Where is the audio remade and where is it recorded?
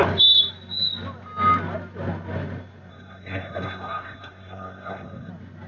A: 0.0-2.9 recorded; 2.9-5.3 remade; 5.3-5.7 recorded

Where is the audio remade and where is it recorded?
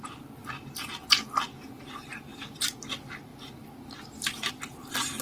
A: 0.0-2.3 recorded; 2.3-2.9 remade; 2.9-3.3 recorded; 3.3-4.5 remade; 4.5-5.2 recorded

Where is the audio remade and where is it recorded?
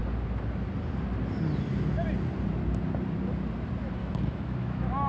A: 0.0-4.0 recorded; 4.0-5.1 remade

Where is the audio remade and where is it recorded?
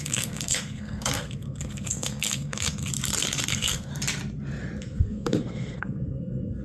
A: 0.0-2.9 remade; 2.9-3.5 recorded; 3.5-3.9 remade; 3.9-4.8 recorded; 4.8-6.6 remade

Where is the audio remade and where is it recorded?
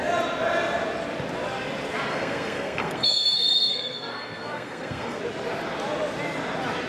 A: 0.0-2.1 recorded; 2.1-5.2 remade; 5.2-6.9 recorded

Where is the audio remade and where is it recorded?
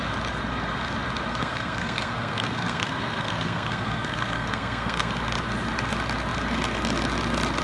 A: 0.0-1.3 recorded; 1.3-5.1 remade; 5.1-7.6 recorded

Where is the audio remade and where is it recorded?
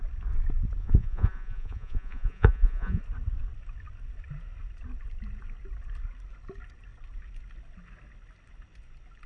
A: 0.0-0.8 recorded; 0.8-3.0 remade; 3.0-9.3 recorded